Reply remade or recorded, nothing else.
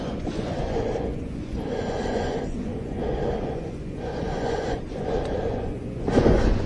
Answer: remade